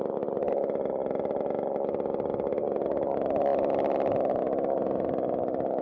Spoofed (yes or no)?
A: no